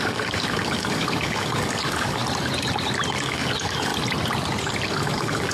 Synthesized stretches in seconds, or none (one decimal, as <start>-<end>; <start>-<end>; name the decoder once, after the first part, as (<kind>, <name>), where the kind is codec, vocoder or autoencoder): 0.0-2.2 (codec, DAC); 3.2-3.9; 4.9-5.5